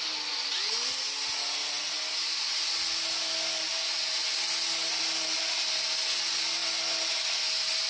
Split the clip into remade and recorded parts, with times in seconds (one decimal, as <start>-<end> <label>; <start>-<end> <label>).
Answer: 0.0-7.9 recorded